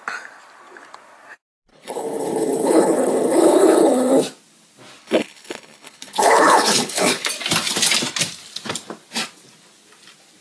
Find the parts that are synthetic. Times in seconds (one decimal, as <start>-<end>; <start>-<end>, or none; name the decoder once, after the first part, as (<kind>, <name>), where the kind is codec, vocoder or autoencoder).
1.7-4.1 (codec, HILCodec); 5.0-7.3